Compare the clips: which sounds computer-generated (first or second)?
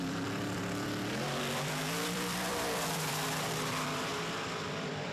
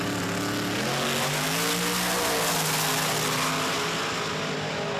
first